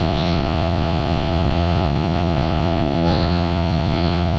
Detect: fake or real fake